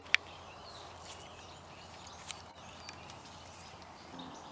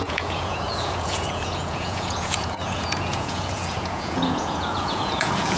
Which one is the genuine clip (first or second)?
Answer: first